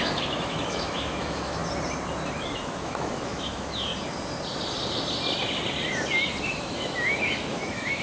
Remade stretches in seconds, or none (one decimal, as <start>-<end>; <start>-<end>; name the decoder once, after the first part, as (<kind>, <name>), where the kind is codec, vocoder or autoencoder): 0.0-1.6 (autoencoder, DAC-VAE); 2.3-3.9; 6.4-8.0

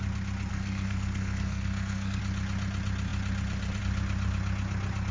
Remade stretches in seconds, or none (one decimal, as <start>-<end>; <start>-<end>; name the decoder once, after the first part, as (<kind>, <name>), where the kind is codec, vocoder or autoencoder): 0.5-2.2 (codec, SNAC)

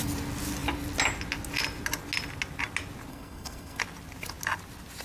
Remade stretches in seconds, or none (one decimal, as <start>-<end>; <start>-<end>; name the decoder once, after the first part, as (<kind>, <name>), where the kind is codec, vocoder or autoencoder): 3.1-3.8 (codec, SNAC)

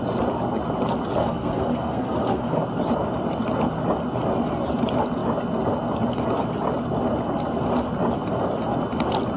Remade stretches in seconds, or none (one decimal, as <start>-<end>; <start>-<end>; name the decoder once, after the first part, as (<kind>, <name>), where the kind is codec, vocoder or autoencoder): 1.2-2.6 (codec, SNAC)